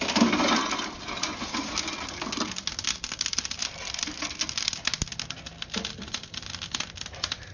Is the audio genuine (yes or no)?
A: yes